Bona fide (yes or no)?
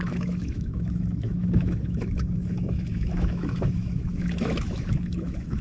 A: no